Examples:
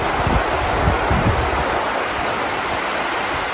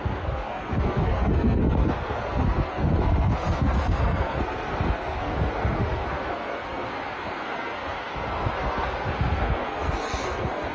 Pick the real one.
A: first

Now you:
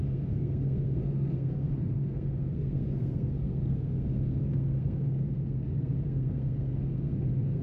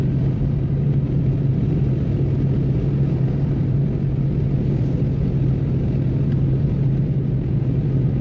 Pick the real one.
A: second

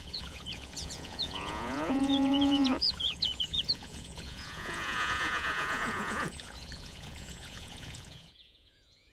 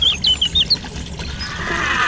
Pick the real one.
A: second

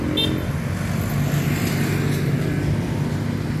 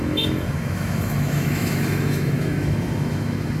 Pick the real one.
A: first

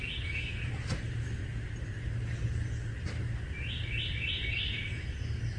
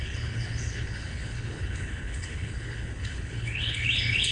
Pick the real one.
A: first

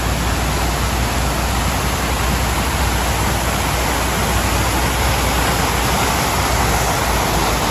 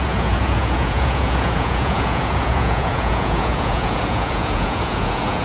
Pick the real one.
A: first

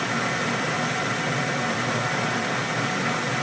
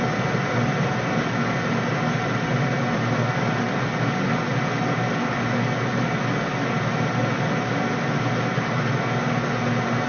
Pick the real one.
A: second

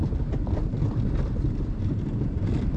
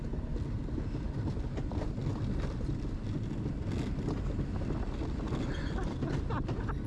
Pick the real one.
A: second